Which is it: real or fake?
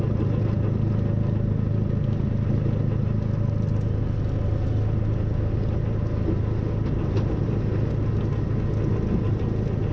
real